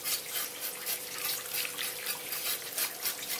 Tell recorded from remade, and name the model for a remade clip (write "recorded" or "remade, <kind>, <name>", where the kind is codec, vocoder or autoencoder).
recorded